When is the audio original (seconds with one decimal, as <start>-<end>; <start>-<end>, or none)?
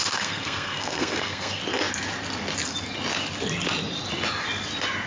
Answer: 1.6-5.1